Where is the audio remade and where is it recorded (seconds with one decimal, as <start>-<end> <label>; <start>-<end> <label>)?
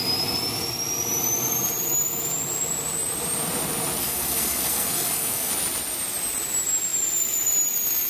0.0-4.0 recorded; 4.0-5.5 remade; 5.5-8.1 recorded